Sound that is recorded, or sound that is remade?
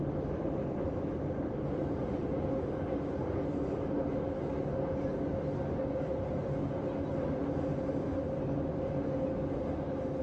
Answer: recorded